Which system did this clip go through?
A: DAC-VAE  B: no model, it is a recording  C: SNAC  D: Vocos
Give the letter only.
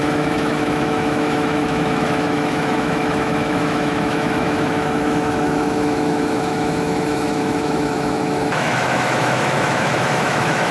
A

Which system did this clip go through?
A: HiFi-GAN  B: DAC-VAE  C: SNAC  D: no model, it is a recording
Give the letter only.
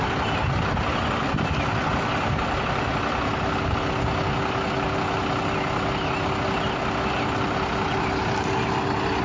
D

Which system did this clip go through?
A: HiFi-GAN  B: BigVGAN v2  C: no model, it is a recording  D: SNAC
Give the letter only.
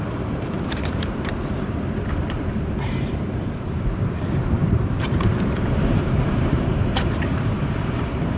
B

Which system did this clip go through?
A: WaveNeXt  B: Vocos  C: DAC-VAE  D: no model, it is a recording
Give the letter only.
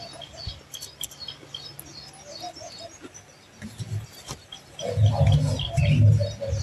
D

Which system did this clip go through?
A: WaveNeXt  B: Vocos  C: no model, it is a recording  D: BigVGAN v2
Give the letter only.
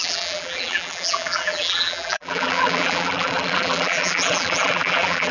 D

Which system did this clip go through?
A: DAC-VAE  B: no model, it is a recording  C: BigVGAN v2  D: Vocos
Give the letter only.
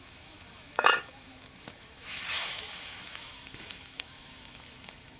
A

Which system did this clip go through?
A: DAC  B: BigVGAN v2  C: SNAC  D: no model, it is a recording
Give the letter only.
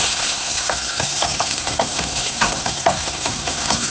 C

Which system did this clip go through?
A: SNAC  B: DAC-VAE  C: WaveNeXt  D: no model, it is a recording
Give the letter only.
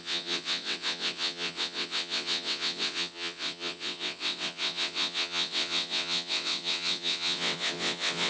C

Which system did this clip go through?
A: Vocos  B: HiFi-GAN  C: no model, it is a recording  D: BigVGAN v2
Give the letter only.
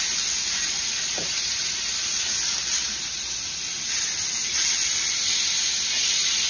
C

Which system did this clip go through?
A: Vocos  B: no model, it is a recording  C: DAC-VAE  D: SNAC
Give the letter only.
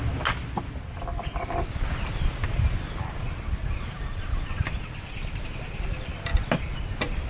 B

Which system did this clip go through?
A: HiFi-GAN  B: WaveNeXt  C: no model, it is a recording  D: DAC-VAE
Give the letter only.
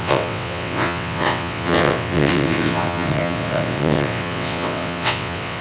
B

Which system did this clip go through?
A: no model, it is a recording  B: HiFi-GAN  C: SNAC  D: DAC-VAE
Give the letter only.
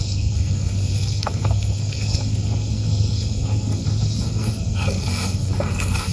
C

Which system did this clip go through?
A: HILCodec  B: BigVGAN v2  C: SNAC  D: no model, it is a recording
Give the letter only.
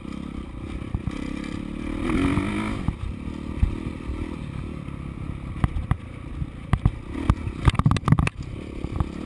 D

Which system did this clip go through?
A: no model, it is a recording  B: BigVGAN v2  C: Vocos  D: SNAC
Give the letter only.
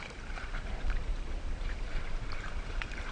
B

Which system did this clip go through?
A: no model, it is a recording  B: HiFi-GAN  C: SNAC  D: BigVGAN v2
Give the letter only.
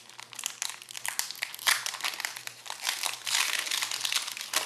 A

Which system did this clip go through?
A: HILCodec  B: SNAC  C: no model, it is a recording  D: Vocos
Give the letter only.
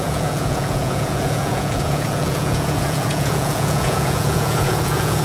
D